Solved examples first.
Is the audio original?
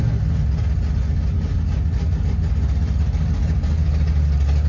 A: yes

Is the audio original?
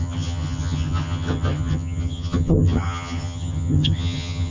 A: no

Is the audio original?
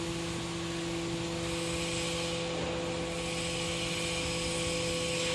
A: yes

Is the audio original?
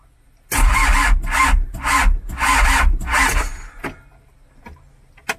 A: yes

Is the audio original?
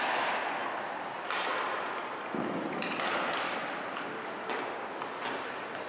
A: yes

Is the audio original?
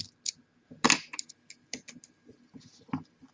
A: yes